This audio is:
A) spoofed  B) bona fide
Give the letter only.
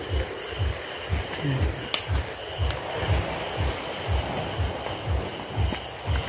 B